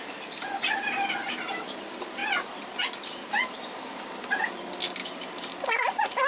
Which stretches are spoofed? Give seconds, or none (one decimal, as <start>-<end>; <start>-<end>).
2.2-3.6; 5.0-6.3